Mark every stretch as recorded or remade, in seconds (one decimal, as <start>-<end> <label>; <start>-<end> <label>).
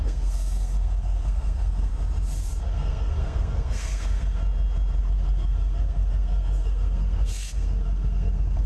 0.0-1.9 remade; 1.9-2.6 recorded; 2.6-4.4 remade; 4.4-5.0 recorded; 5.0-8.7 remade